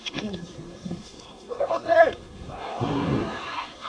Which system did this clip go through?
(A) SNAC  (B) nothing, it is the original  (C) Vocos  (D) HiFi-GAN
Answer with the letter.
A